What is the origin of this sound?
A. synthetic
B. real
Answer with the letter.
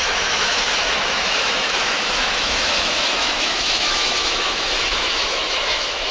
A